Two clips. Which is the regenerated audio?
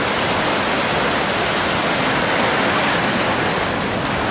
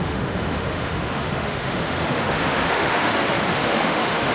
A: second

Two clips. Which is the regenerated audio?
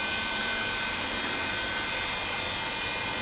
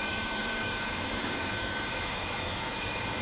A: second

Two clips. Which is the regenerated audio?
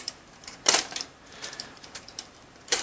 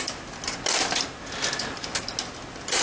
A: first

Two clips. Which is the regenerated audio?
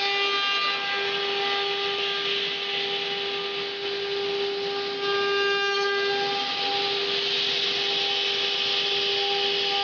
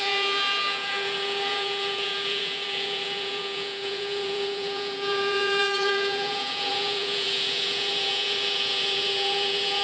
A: second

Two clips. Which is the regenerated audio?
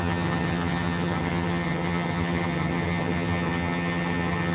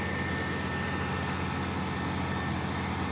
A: first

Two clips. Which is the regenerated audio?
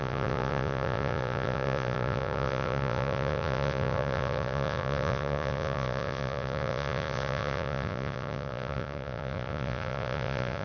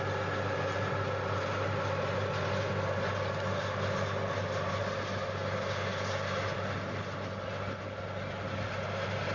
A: first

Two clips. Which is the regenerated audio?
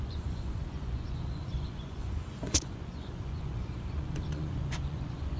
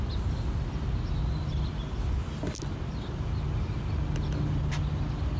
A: first